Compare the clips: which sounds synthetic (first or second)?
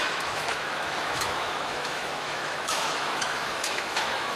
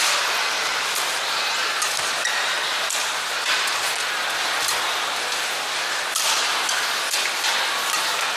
first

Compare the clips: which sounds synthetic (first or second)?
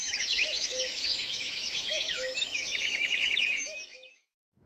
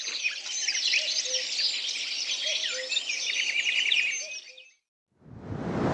first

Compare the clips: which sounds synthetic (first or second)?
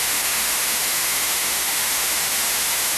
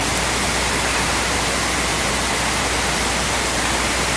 first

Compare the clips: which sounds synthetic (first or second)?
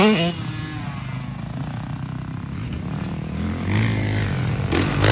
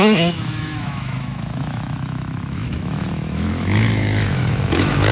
second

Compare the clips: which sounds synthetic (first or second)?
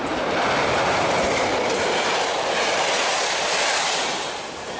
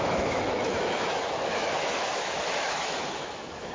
second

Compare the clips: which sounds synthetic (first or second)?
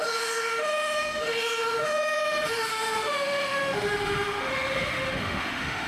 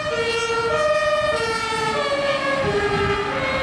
first